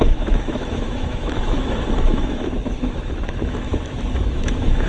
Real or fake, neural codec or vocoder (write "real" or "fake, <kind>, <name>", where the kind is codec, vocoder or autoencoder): fake, autoencoder, DAC-VAE